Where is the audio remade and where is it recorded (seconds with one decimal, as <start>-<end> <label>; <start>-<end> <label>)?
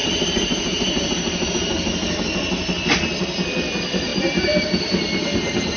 0.0-1.5 remade; 1.5-4.1 recorded; 4.1-4.7 remade; 4.7-5.8 recorded